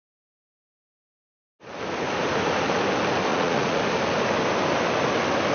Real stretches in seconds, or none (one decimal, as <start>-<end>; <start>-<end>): 0.0-3.3; 3.8-5.5